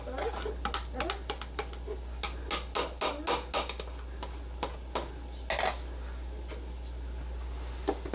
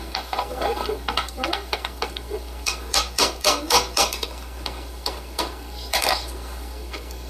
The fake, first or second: second